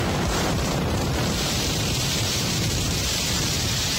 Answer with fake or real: fake